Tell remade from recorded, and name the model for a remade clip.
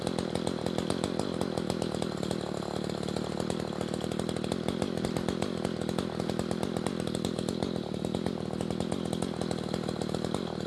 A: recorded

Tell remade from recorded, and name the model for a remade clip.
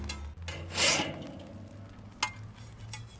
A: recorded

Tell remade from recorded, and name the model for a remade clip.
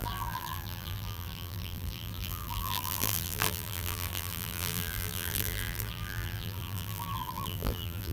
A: remade, vocoder, BigVGAN v2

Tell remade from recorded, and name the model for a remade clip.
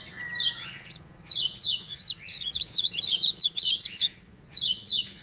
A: remade, vocoder, Vocos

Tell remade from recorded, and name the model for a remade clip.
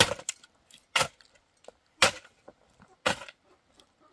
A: recorded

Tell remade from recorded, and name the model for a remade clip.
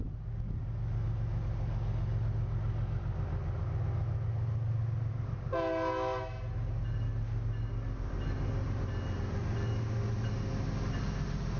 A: recorded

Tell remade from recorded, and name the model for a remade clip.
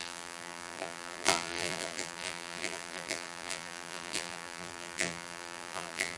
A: remade, vocoder, BigVGAN v2